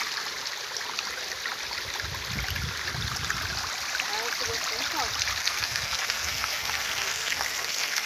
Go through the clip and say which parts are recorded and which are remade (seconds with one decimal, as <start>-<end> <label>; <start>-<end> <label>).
0.0-5.4 recorded; 5.4-8.1 remade